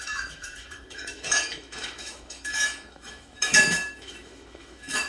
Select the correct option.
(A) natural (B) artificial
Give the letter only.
B